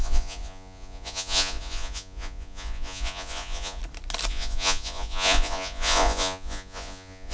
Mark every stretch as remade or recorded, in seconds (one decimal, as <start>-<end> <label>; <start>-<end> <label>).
0.0-3.8 remade; 3.8-4.3 recorded; 4.3-7.3 remade